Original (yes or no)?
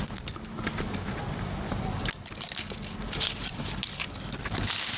yes